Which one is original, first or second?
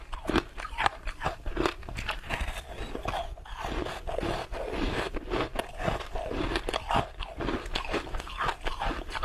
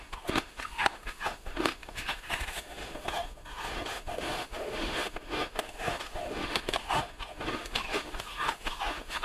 first